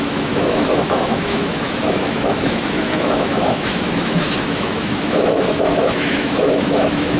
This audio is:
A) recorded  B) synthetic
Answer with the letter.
B